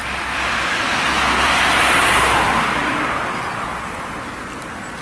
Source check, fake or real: fake